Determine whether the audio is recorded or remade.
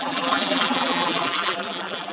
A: remade